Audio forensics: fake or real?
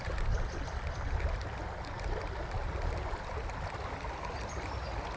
real